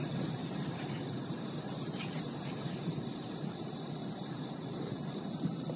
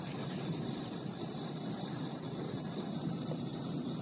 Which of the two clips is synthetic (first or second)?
second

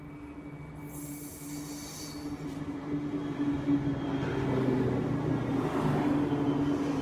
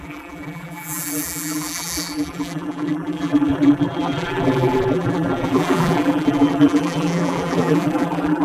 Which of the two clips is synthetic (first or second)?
second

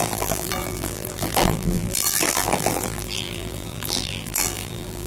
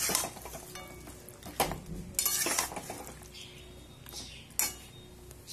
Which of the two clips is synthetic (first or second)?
first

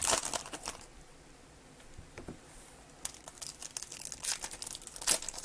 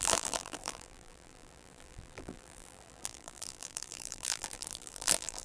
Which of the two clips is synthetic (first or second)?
second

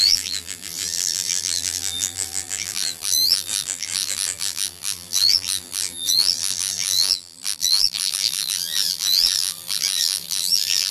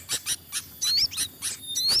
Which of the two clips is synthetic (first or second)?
first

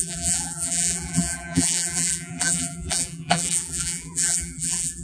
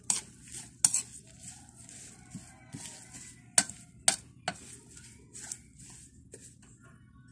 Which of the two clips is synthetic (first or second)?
first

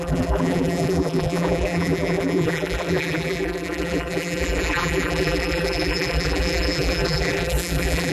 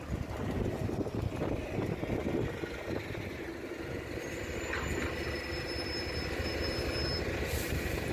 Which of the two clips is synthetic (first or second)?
first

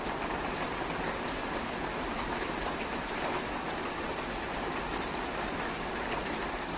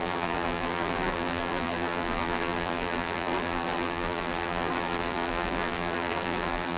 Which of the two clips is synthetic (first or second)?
second